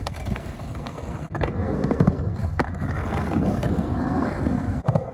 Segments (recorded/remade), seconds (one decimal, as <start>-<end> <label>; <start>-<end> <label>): 0.0-5.1 remade

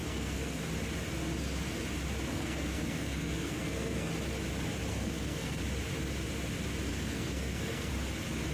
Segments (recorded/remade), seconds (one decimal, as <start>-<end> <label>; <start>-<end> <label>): 0.0-0.6 remade; 0.6-2.3 recorded; 2.3-4.1 remade; 4.1-4.9 recorded; 4.9-5.6 remade; 5.6-6.9 recorded; 6.9-7.9 remade; 7.9-8.5 recorded

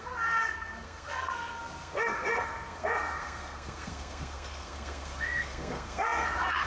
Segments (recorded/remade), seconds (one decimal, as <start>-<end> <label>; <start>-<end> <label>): 0.0-6.7 remade

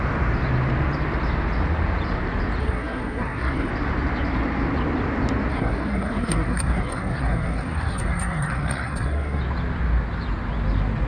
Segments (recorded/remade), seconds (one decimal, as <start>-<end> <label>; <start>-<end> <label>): 0.0-2.6 recorded; 2.6-3.7 remade; 3.7-5.5 recorded; 5.5-9.4 remade; 9.4-11.1 recorded

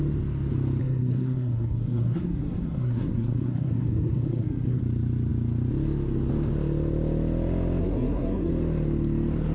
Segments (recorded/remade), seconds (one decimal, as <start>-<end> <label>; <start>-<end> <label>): 0.0-0.8 recorded; 0.8-4.8 remade; 4.8-7.8 recorded; 7.8-8.5 remade; 8.5-9.5 recorded

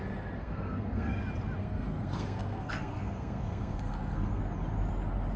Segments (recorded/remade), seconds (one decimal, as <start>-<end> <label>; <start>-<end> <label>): 0.0-0.4 recorded; 0.4-1.2 remade; 1.2-1.6 recorded; 1.6-4.4 remade; 4.4-5.4 recorded

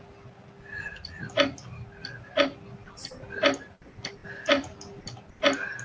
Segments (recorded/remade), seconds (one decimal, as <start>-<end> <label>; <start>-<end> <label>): 0.0-5.8 recorded

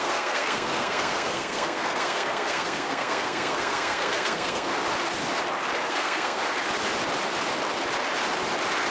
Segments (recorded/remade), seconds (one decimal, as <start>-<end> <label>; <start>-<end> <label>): 0.0-4.7 remade; 4.7-5.9 recorded; 5.9-6.4 remade; 6.4-8.9 recorded